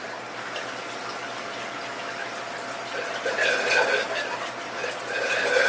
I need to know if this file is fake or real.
real